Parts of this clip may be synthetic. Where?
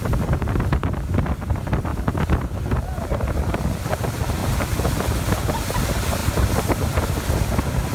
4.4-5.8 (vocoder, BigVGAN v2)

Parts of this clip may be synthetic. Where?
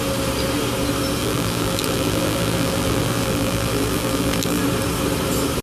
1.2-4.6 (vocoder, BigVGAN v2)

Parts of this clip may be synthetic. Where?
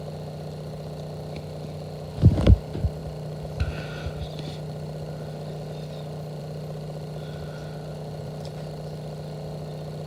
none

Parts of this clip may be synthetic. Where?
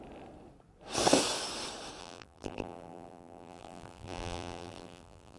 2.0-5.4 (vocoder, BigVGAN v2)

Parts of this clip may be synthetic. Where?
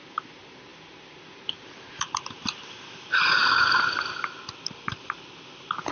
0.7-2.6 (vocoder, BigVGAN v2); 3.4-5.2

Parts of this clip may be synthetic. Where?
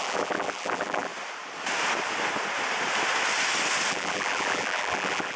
0.0-1.1 (vocoder, BigVGAN v2); 3.9-5.4